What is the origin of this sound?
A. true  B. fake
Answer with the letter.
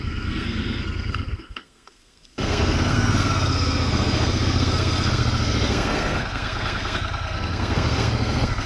B